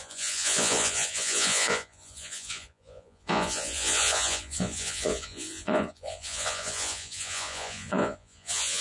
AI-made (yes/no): yes